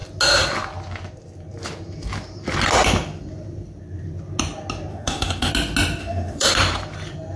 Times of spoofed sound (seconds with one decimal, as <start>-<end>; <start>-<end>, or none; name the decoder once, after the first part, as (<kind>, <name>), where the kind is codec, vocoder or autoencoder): 4.9-5.5 (autoencoder, DAC-VAE); 6.0-6.5